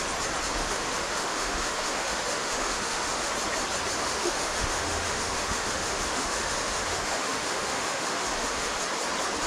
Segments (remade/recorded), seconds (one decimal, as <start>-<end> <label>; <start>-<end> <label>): 0.0-0.6 recorded; 0.6-3.3 remade; 3.3-4.0 recorded; 4.0-8.8 remade; 8.8-9.5 recorded